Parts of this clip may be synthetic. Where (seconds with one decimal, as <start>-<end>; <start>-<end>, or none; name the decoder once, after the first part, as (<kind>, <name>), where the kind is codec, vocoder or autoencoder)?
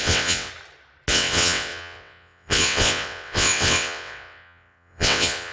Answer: 0.0-0.5 (vocoder, WaveNeXt); 1.1-5.5